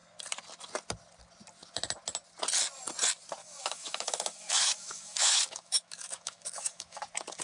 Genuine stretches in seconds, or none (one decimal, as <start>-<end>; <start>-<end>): 0.0-3.4; 7.0-7.4